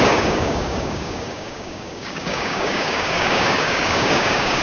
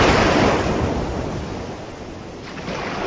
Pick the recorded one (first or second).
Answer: second